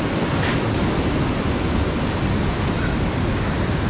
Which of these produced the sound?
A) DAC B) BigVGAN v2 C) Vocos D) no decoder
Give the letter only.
D